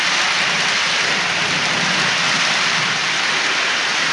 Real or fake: fake